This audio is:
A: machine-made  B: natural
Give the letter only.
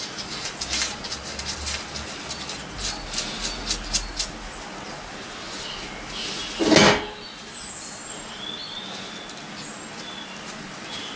B